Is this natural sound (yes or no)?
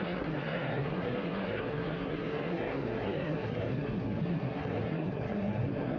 no